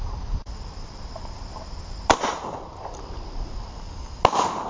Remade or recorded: recorded